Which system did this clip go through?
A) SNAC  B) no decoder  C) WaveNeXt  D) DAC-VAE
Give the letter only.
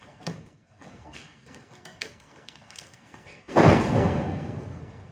A